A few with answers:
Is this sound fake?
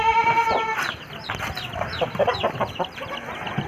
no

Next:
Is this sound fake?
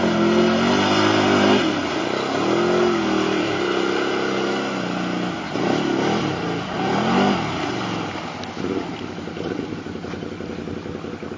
no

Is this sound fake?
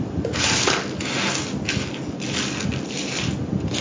no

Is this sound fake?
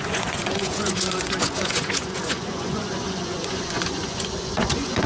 yes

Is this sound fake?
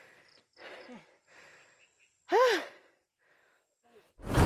no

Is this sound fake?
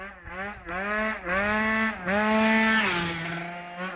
no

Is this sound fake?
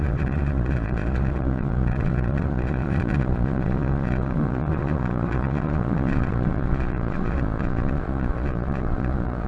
yes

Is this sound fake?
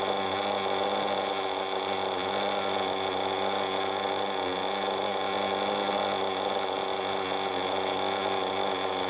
no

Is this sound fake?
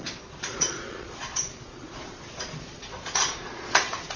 yes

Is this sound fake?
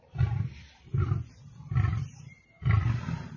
no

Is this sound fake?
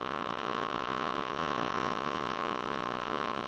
yes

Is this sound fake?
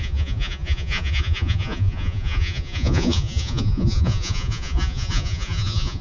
yes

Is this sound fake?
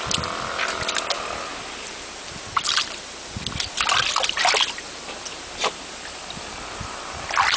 no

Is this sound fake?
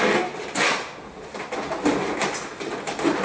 no